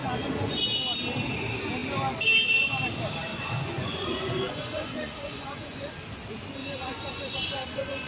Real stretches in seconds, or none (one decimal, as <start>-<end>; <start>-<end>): 0.6-3.3; 5.9-6.6